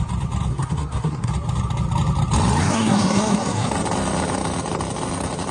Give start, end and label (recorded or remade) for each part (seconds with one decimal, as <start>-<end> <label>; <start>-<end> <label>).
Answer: 0.0-0.5 recorded; 0.5-1.3 remade; 1.3-2.6 recorded; 2.6-3.7 remade; 3.7-5.5 recorded